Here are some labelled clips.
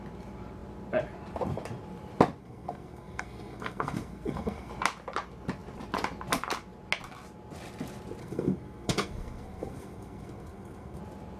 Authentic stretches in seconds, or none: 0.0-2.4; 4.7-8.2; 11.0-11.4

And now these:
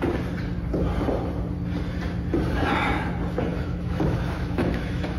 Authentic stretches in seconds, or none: 0.0-3.5

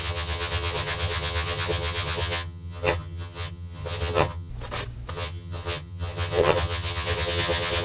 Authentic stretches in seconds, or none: 4.5-5.1

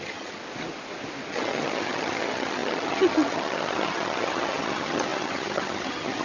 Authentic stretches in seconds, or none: 0.4-1.3